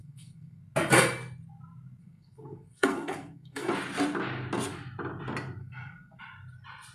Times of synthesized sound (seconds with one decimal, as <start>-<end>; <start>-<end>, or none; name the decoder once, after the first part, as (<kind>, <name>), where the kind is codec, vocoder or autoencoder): 0.0-0.6 (codec, SNAC); 2.0-3.7; 5.6-6.2